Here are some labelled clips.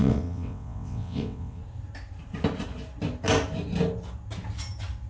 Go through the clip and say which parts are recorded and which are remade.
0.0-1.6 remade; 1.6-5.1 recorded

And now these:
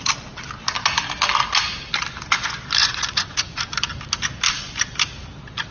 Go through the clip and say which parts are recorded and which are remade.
0.0-2.8 recorded; 2.8-3.6 remade; 3.6-5.7 recorded

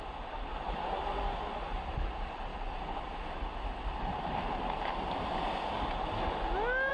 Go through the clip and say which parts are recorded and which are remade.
0.0-6.9 recorded

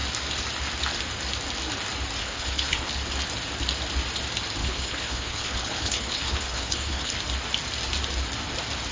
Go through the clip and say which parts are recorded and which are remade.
0.0-2.2 recorded; 2.2-2.9 remade; 2.9-4.6 recorded; 4.6-7.1 remade; 7.1-8.9 recorded

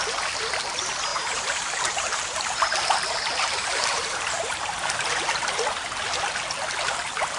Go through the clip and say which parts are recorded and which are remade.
0.0-1.1 recorded; 1.1-5.5 remade; 5.5-7.4 recorded

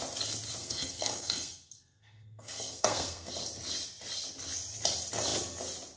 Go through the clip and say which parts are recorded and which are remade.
0.0-0.6 recorded; 0.6-3.3 remade; 3.3-6.0 recorded

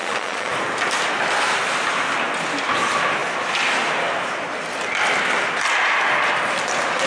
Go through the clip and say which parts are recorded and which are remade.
0.0-0.5 remade; 0.5-7.1 recorded

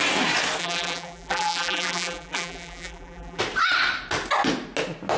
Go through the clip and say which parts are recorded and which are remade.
0.0-0.6 recorded; 0.6-3.4 remade; 3.4-5.2 recorded